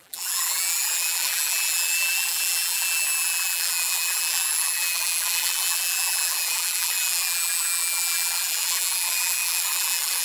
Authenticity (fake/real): fake